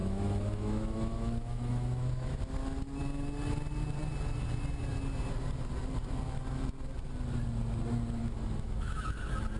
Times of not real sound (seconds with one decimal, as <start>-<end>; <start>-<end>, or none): 0.0-2.4; 8.2-9.0

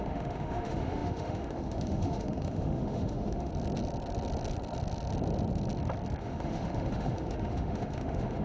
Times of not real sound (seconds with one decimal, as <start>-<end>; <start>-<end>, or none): 0.0-3.5; 6.2-8.4

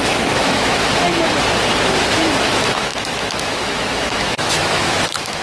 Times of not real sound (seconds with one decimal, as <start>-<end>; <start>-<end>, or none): 0.0-0.8; 2.3-5.4

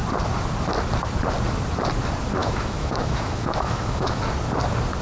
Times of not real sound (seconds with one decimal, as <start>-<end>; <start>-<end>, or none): 2.4-4.2

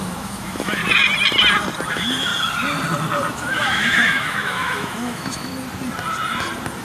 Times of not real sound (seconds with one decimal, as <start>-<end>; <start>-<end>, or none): 0.0-0.8; 1.9-2.3; 3.3-5.5